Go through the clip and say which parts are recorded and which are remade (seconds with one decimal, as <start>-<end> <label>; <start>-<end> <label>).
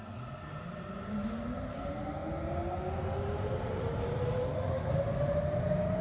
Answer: 0.0-6.0 recorded